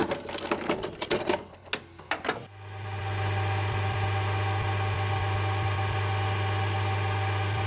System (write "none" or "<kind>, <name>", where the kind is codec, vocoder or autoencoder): none